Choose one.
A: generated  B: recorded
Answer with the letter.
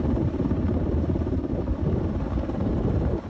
A